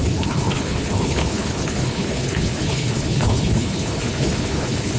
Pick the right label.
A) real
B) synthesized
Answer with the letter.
B